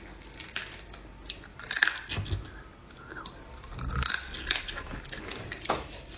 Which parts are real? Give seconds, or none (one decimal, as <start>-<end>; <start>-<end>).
0.0-6.2